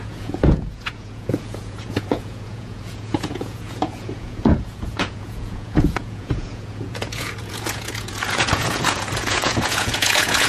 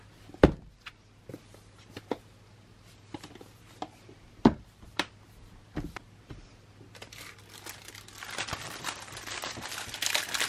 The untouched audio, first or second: second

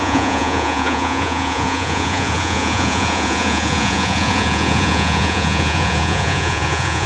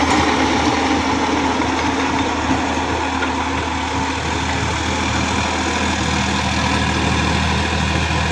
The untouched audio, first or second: second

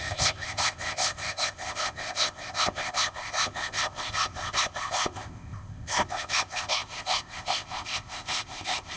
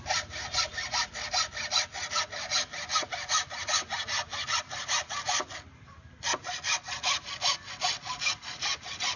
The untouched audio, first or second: second